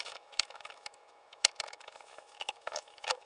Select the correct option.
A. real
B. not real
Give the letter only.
B